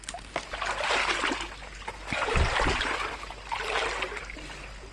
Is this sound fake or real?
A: real